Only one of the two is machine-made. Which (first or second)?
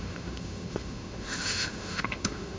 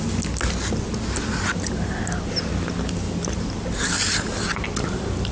first